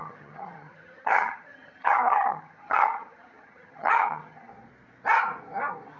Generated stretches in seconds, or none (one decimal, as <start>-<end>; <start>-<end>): 0.0-4.5